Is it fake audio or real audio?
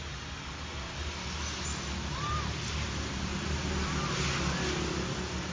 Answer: real